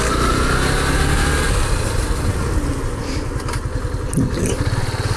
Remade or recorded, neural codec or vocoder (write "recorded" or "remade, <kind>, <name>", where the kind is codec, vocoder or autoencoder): recorded